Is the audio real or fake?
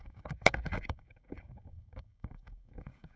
fake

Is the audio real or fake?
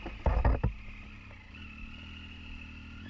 real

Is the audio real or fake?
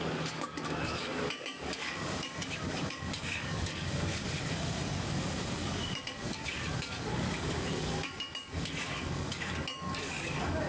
fake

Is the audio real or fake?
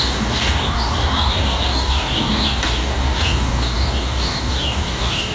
fake